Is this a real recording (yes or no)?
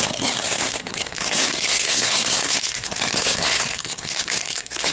no